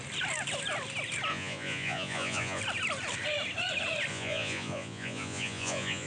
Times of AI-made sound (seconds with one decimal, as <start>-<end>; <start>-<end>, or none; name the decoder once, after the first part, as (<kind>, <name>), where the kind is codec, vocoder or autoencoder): 1.3-2.6 (vocoder, Vocos); 4.1-6.1